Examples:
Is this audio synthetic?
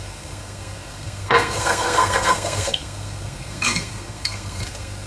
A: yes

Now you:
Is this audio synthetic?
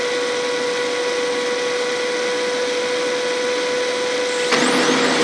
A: no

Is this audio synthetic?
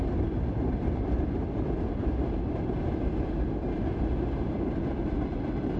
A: no